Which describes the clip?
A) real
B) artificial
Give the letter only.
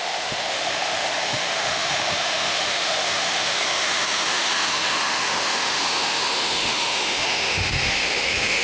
B